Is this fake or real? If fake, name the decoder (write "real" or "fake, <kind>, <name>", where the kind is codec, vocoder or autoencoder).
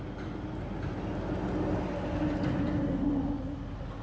real